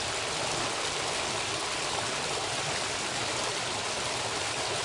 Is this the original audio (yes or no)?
yes